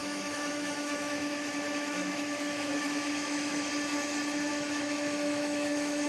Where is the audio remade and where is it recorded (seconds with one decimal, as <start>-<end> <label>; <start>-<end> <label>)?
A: 0.0-3.7 remade; 3.7-4.5 recorded; 4.5-6.1 remade